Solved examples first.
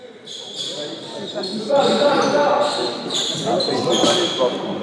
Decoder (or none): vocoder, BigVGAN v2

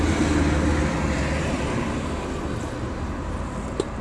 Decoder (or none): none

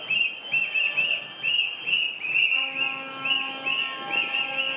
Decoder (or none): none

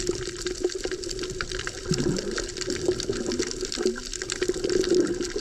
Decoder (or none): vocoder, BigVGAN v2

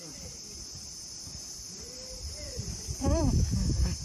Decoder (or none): none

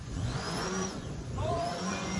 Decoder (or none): vocoder, Vocos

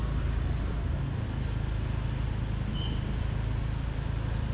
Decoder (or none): none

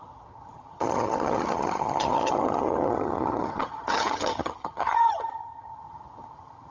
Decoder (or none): vocoder, HiFi-GAN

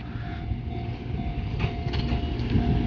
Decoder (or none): none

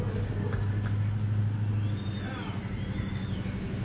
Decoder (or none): none